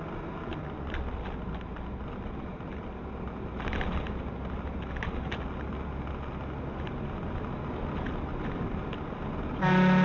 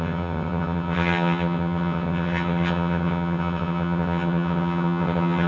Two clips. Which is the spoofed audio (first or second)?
second